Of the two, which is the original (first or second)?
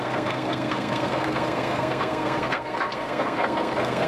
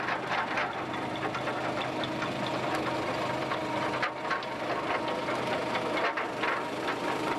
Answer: second